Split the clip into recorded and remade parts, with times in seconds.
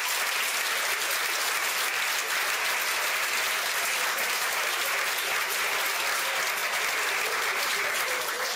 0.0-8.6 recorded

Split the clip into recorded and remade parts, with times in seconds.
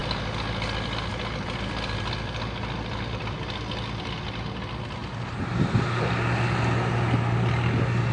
0.0-8.1 recorded